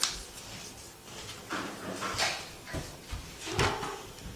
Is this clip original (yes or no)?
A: yes